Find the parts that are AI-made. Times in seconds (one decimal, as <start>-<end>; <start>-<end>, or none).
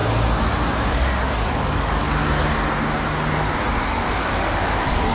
0.9-2.2; 3.8-5.1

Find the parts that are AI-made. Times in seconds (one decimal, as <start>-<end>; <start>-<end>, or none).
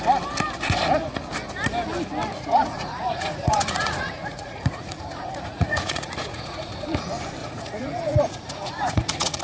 2.3-6.7; 7.4-9.4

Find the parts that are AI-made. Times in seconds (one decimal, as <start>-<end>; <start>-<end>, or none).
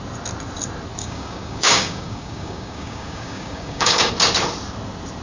1.0-4.1